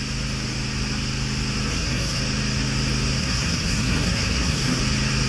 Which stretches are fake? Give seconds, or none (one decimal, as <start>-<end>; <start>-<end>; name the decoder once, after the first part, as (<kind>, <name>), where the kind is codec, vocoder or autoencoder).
1.7-2.2 (codec, SNAC); 3.2-4.8